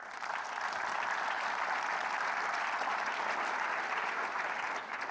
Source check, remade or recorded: recorded